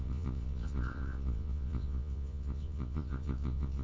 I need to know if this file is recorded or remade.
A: remade